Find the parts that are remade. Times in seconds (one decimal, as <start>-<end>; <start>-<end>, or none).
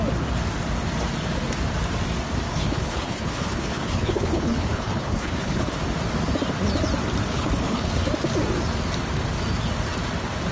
2.5-5.8; 7.3-7.9